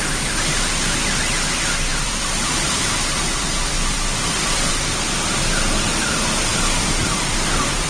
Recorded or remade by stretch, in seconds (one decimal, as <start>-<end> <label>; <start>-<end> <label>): 0.0-1.9 recorded; 1.9-4.7 remade; 4.7-6.5 recorded; 6.5-7.1 remade; 7.1-7.9 recorded